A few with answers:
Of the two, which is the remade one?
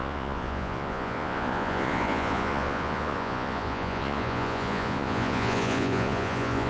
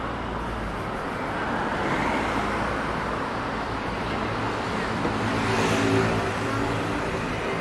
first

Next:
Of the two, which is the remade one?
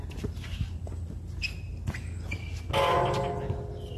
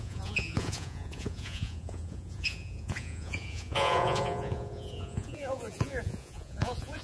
second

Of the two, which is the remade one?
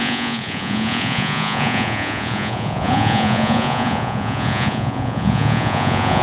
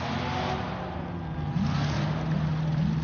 first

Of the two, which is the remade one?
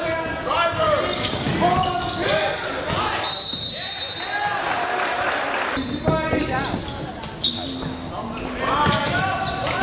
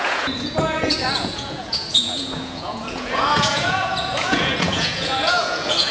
second